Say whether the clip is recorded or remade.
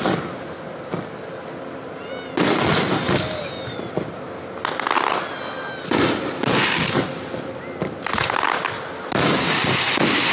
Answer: recorded